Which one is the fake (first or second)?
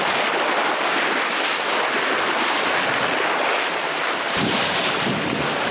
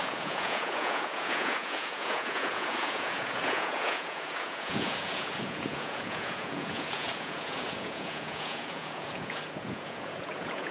second